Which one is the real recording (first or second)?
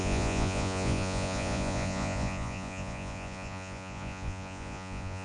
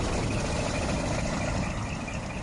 second